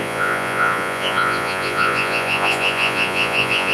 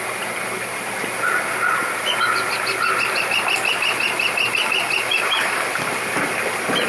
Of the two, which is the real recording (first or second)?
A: second